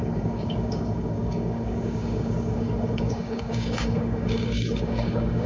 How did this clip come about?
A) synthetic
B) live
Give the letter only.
A